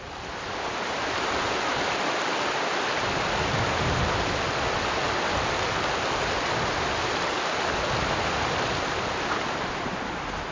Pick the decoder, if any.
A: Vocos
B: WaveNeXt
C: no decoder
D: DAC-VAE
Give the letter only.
C